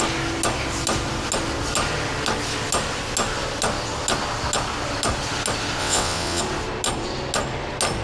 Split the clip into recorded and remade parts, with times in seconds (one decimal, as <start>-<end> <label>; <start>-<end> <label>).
0.0-5.8 recorded; 5.8-6.4 remade; 6.4-8.0 recorded